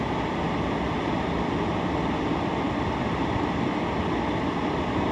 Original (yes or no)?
yes